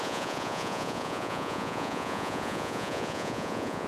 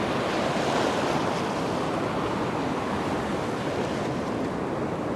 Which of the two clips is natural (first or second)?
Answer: second